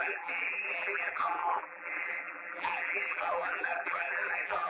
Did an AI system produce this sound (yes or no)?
yes